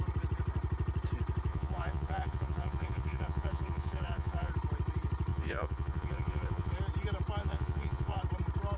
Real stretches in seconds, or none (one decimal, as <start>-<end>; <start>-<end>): 0.0-1.5; 4.5-5.3; 6.7-7.4; 8.2-8.8